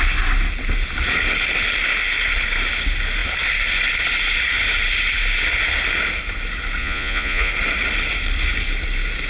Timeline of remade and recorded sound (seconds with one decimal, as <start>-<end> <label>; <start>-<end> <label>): 0.0-6.8 recorded; 6.8-7.5 remade; 7.5-9.3 recorded

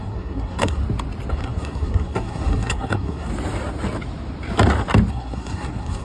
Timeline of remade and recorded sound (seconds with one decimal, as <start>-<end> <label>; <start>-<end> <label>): 0.0-0.8 remade; 0.8-1.3 recorded; 1.3-3.3 remade; 3.3-5.1 recorded; 5.1-6.0 remade